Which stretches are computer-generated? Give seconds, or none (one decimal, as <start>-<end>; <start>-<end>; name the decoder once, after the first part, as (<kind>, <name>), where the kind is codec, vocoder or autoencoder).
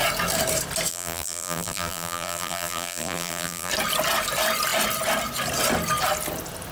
0.9-3.7 (vocoder, BigVGAN v2)